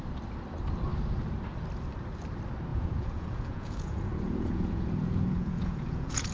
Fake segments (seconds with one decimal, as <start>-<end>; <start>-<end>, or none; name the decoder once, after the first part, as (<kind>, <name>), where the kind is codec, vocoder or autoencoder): 2.7-6.3 (vocoder, Vocos)